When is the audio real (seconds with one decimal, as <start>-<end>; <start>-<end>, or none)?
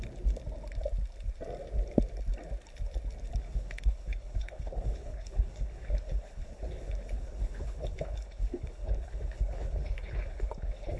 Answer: 0.0-3.4